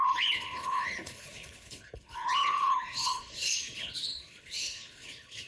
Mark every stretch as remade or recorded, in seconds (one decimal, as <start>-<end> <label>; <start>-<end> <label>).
0.0-5.5 remade